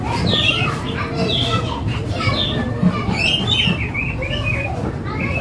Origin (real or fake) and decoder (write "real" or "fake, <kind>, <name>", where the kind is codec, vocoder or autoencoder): fake, vocoder, BigVGAN v2